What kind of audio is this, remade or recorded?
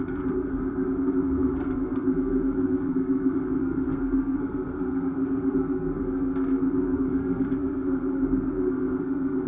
remade